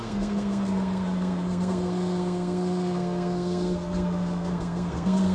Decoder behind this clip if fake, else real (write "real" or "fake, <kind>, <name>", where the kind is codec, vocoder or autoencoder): fake, codec, SNAC